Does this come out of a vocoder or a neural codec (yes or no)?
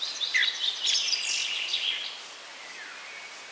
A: no